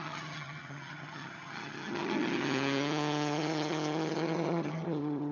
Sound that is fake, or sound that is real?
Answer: fake